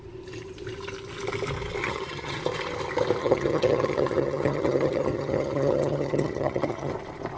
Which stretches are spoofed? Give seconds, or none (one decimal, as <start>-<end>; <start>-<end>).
1.8-2.4; 3.2-6.9